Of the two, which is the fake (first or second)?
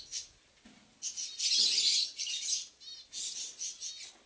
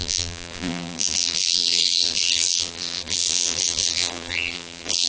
second